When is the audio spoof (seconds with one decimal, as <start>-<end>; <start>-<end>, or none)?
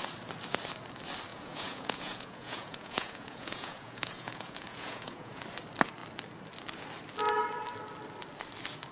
1.3-5.4